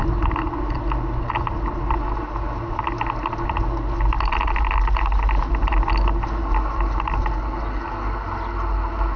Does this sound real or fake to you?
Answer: real